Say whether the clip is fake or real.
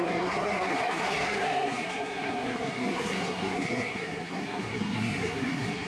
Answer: fake